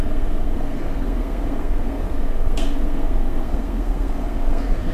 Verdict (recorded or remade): remade